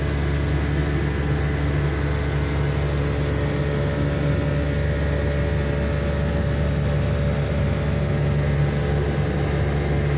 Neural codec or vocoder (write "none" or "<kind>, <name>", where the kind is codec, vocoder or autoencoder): none